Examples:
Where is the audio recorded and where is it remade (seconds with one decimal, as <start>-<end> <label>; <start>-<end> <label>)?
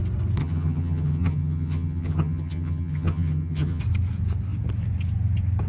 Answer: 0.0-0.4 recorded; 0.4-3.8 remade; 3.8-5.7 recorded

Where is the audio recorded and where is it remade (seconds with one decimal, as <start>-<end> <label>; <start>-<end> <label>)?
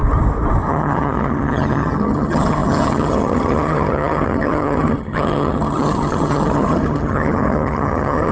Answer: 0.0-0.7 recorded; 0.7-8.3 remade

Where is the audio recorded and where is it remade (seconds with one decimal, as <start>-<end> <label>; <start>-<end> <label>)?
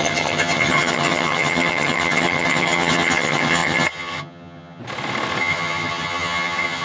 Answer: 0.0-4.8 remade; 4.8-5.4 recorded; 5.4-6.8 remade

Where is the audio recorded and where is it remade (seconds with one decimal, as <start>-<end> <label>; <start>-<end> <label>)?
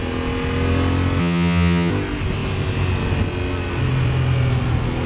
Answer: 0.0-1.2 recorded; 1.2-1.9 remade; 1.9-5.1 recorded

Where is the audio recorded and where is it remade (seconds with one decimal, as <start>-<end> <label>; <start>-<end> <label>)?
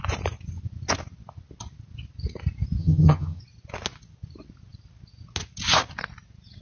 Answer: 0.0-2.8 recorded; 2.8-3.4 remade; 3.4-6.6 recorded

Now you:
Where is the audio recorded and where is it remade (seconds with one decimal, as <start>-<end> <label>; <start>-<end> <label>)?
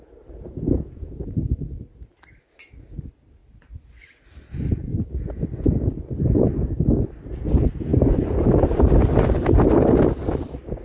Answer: 0.0-10.8 recorded